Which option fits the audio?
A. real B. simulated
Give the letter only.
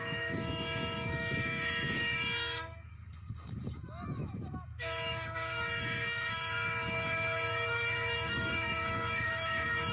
B